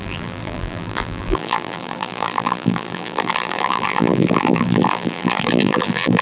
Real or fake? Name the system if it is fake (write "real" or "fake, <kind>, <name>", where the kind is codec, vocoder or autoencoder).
fake, vocoder, BigVGAN v2